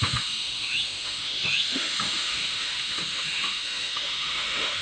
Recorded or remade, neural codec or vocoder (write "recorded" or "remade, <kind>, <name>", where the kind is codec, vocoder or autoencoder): remade, autoencoder, DAC-VAE